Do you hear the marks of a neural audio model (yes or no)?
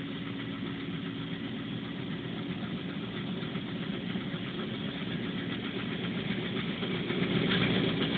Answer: no